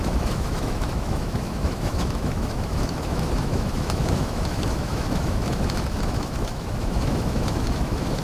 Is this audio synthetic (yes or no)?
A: yes